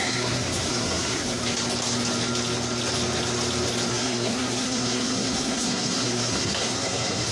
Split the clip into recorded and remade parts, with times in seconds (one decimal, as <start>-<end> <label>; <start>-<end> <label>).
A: 0.0-1.4 remade; 1.4-3.9 recorded; 3.9-7.3 remade